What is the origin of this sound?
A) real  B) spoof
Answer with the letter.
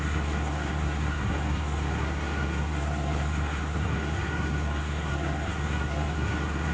B